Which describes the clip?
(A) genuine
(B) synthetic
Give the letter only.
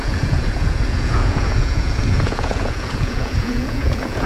B